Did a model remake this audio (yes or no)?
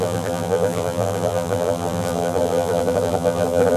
yes